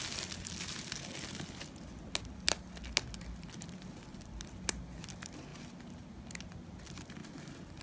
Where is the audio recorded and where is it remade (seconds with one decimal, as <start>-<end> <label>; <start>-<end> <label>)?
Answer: 0.0-7.8 recorded